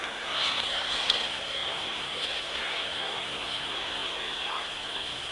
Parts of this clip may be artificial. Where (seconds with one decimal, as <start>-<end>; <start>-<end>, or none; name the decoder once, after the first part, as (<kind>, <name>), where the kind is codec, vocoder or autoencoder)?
0.0-5.3 (codec, SNAC)